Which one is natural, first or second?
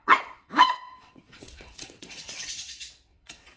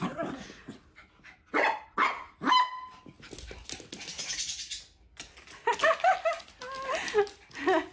second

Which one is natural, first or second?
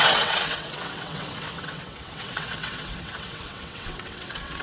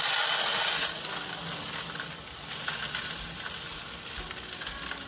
second